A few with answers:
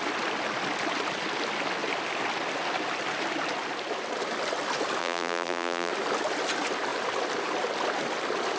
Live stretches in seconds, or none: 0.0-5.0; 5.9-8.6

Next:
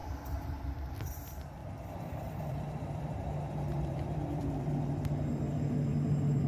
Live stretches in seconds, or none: 1.0-1.6; 4.9-6.5

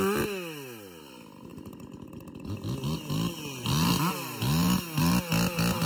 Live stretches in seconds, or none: 0.0-5.9

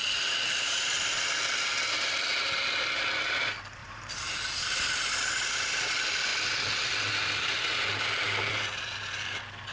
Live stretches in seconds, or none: 0.0-3.8; 4.7-9.7

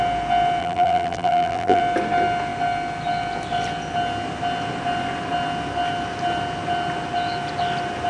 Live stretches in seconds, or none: 0.0-0.6; 1.8-8.1

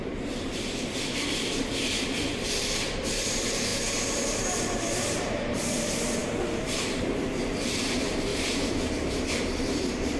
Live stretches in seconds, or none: 8.3-9.1